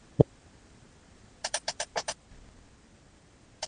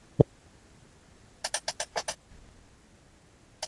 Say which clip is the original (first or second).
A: second